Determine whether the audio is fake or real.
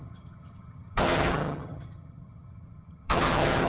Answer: fake